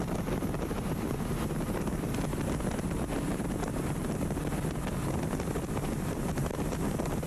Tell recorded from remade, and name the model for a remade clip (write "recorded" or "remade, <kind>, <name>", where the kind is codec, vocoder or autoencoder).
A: recorded